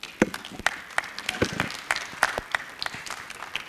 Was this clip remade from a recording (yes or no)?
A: no